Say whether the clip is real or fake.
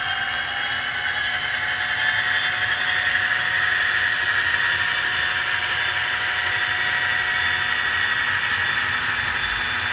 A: real